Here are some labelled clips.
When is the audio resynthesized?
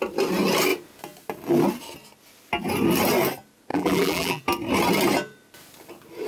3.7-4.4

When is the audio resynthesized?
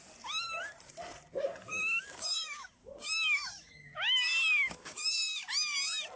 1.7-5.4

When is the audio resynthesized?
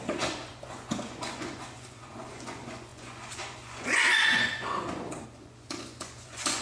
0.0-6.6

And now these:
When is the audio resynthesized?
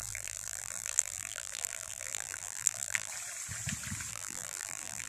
0.0-3.1; 4.1-5.1